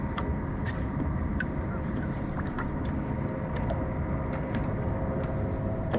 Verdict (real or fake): real